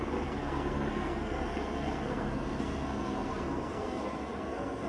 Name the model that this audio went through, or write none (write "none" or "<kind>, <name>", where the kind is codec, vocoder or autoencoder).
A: codec, SNAC